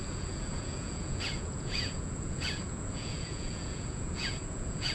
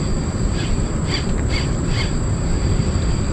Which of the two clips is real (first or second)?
second